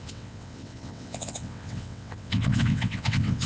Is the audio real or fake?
fake